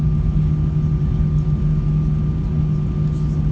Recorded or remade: recorded